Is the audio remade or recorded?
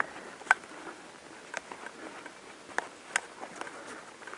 recorded